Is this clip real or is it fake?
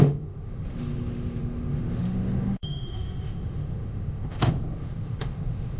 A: fake